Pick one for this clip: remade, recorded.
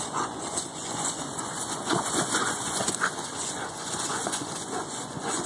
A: remade